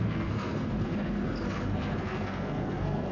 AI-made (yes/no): yes